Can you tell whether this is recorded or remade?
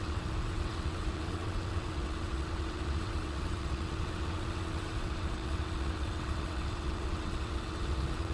remade